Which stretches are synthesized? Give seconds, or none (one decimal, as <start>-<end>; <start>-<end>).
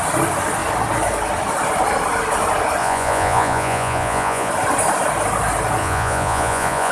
2.8-4.5; 5.8-6.9